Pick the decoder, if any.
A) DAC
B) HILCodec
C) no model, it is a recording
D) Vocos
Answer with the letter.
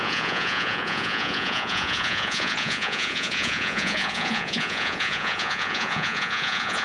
D